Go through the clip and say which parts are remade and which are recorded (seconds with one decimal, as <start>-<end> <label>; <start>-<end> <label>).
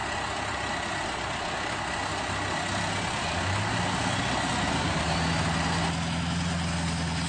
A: 0.0-0.7 remade; 0.7-7.3 recorded